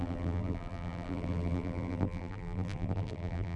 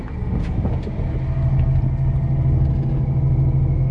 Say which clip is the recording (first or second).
second